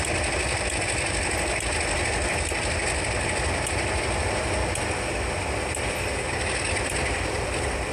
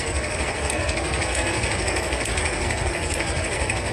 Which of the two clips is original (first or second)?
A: first